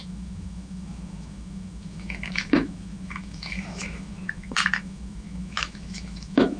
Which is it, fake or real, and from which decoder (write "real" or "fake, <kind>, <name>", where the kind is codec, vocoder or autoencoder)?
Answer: fake, autoencoder, DAC-VAE